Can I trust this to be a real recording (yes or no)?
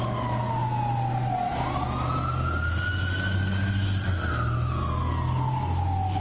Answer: yes